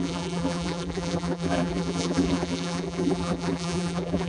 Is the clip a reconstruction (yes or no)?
yes